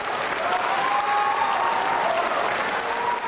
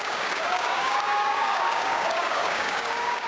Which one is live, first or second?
first